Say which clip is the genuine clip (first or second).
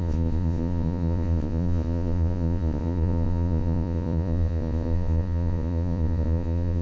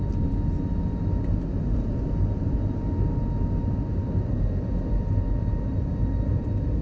second